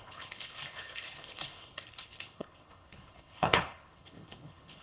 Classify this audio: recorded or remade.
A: remade